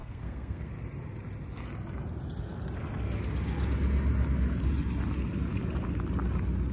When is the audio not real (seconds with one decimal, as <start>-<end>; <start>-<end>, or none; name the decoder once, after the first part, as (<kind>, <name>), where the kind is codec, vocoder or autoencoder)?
0.0-0.7 (codec, SNAC)